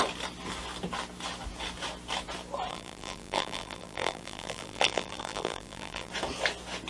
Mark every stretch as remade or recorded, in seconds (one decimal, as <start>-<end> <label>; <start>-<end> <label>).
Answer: 0.0-2.7 recorded; 2.7-6.1 remade; 6.1-6.9 recorded

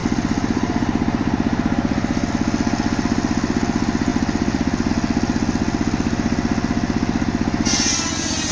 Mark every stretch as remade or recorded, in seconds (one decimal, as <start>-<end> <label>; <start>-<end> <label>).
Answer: 0.0-2.3 remade; 2.3-4.1 recorded; 4.1-4.9 remade; 4.9-8.5 recorded

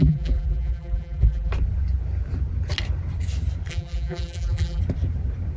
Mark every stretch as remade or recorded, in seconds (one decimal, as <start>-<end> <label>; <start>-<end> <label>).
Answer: 0.0-1.5 remade; 1.5-3.7 recorded; 3.7-4.8 remade; 4.8-5.6 recorded

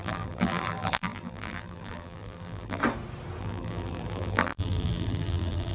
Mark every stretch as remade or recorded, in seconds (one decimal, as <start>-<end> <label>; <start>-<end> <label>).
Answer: 0.0-2.8 remade; 2.8-3.4 recorded; 3.4-5.7 remade

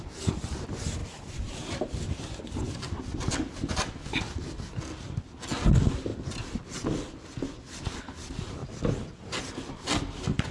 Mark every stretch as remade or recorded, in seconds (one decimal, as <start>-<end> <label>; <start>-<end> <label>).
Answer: 0.0-1.0 recorded; 1.0-4.4 remade; 4.4-10.5 recorded

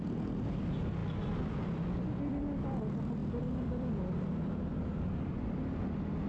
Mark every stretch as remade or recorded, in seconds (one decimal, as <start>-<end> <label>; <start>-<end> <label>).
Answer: 0.0-3.2 recorded; 3.2-3.9 remade; 3.9-4.7 recorded; 4.7-5.3 remade; 5.3-6.3 recorded